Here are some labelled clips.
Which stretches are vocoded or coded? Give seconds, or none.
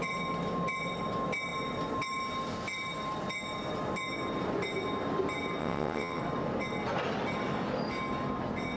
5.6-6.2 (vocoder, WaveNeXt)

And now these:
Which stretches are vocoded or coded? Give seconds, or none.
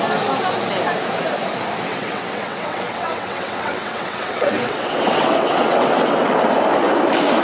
1.9-6.3 (vocoder, WaveNeXt)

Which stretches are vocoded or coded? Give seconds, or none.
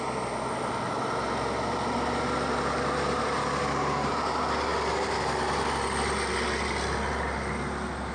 none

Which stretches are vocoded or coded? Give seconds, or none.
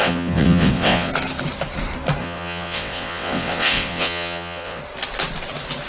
0.0-1.1 (vocoder, WaveNeXt); 2.2-4.8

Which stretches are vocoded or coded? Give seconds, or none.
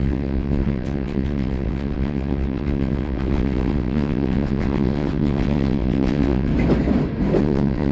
0.0-6.5 (vocoder, WaveNeXt); 7.4-7.9